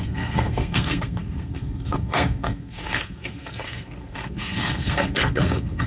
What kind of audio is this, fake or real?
fake